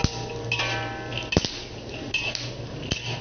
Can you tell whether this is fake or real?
real